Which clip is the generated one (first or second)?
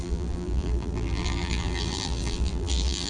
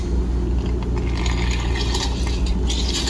first